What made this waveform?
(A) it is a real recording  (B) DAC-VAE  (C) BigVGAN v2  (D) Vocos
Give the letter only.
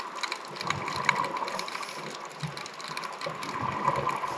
A